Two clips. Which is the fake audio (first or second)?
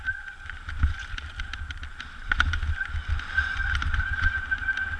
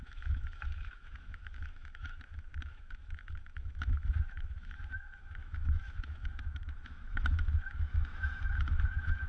second